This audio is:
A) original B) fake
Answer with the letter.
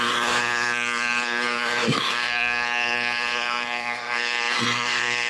B